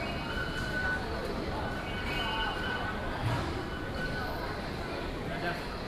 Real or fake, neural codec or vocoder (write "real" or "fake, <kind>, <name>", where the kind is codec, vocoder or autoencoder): real